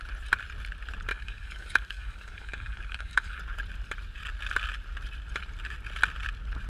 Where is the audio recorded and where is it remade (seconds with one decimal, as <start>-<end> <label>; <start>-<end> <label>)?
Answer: 0.0-1.1 recorded; 1.1-3.4 remade; 3.4-6.7 recorded